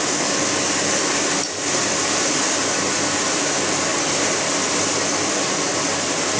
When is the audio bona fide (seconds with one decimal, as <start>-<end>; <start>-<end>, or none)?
0.0-6.4